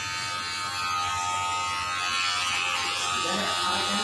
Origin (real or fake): real